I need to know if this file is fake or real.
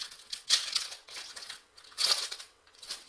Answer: fake